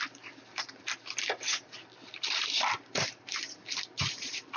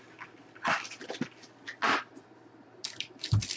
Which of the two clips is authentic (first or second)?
second